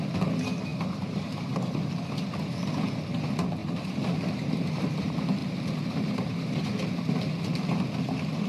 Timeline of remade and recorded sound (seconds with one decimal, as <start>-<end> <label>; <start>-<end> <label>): 0.0-0.7 recorded; 0.7-1.6 remade; 1.6-3.6 recorded; 3.6-5.0 remade; 5.0-5.4 recorded; 5.4-6.6 remade; 6.6-8.5 recorded